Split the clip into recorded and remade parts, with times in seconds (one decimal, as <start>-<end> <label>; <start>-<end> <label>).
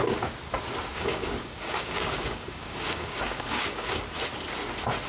0.0-0.9 recorded; 0.9-4.0 remade; 4.0-5.1 recorded